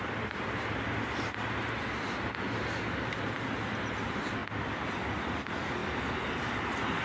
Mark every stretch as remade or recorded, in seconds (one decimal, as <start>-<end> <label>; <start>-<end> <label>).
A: 0.0-7.0 recorded